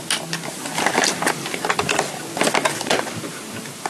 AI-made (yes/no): no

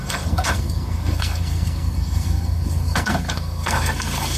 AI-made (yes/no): yes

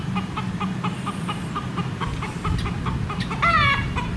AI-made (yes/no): no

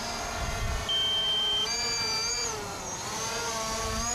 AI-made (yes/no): no